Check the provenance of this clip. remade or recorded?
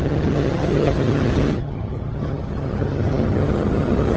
remade